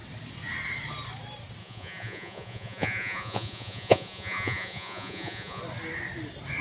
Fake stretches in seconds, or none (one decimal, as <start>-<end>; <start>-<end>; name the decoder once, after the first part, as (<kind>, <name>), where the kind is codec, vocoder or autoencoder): 1.6-5.6 (vocoder, Vocos)